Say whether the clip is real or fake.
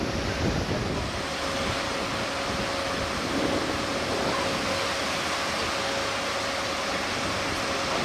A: real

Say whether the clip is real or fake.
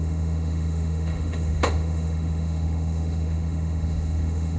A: fake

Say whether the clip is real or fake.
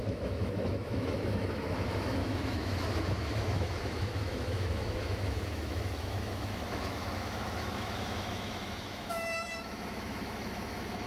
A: fake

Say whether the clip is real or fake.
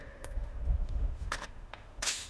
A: fake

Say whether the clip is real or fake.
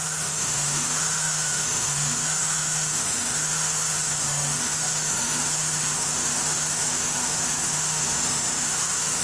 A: fake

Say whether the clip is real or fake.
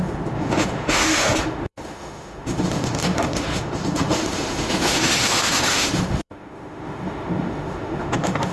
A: fake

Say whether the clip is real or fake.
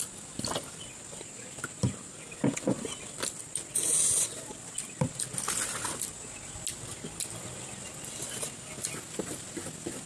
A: real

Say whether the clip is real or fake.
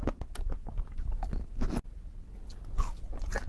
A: real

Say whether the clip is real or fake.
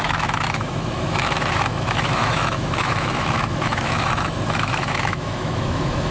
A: fake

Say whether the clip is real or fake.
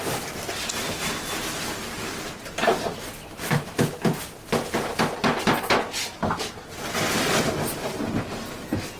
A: real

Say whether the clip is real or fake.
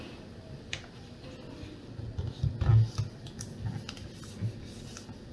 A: real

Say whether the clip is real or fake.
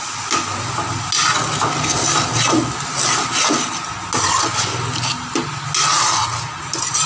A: real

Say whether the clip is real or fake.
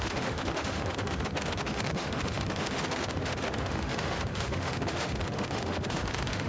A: fake